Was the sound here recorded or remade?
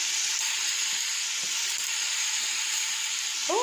recorded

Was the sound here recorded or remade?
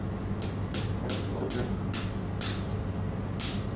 recorded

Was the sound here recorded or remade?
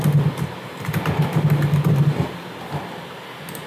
recorded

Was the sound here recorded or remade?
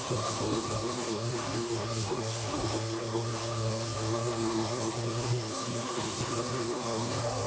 remade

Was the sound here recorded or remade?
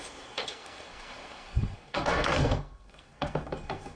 remade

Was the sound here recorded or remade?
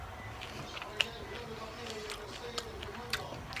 recorded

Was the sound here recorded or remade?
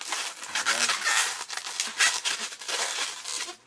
recorded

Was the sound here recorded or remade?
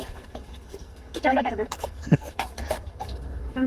remade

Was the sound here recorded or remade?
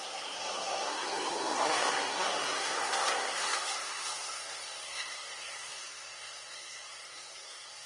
remade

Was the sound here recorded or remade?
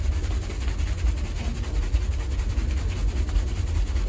recorded